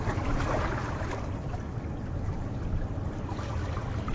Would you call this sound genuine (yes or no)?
yes